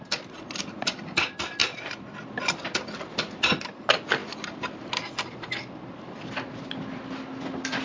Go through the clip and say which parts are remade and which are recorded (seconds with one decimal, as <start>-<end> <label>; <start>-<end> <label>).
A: 0.0-7.8 recorded